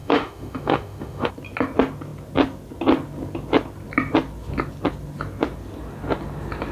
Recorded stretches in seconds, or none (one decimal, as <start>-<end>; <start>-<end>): 1.3-6.7